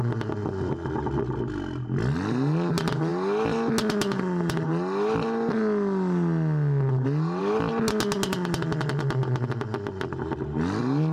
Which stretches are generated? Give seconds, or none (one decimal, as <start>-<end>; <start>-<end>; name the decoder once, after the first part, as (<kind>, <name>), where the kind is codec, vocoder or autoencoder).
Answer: none